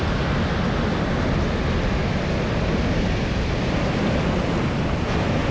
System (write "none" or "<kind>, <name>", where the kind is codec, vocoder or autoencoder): none